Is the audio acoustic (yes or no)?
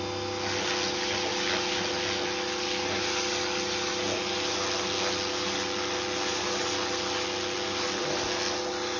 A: yes